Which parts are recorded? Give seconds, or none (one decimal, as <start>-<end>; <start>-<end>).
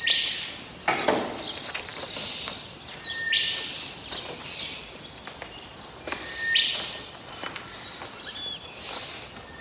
0.0-9.6